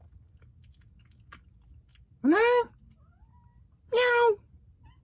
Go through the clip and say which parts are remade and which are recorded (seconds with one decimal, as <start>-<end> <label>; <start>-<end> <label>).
0.0-5.0 recorded